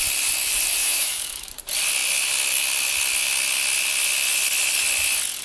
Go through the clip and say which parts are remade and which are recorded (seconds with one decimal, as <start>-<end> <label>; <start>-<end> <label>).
0.0-0.8 recorded; 0.8-1.5 remade; 1.5-5.4 recorded